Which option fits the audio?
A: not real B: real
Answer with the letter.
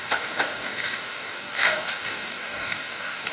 A